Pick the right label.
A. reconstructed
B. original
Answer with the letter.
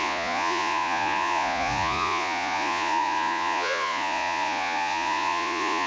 A